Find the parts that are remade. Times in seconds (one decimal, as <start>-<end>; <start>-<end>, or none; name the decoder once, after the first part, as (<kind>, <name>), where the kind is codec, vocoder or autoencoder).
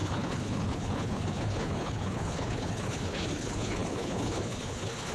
0.0-5.1 (codec, HILCodec)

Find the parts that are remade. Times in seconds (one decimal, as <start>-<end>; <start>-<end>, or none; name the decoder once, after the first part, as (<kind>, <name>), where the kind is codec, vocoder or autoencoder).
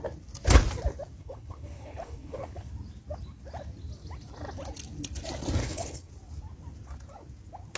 1.2-2.7 (codec, HILCodec); 5.6-6.1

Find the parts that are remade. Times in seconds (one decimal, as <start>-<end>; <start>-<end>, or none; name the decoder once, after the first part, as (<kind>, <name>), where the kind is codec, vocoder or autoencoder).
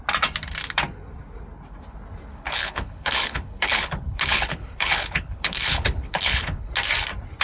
2.3-6.7 (codec, HILCodec)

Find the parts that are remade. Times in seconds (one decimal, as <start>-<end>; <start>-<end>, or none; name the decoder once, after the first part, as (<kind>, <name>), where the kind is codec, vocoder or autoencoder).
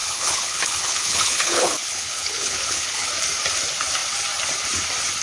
0.0-3.1 (codec, HILCodec)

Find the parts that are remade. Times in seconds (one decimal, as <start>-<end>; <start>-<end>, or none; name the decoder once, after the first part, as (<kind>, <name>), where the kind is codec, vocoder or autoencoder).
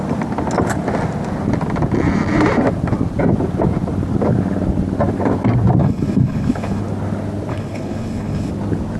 5.8-6.8 (codec, HILCodec); 7.5-8.5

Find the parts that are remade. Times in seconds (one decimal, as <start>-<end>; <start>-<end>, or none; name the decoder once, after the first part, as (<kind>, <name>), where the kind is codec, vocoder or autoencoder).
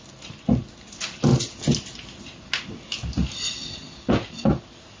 none